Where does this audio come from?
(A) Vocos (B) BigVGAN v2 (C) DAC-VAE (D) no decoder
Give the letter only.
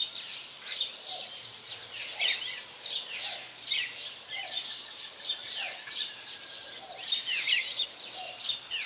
B